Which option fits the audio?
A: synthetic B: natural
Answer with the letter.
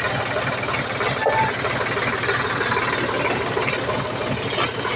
B